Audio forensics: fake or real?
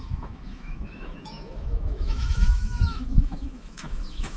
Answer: fake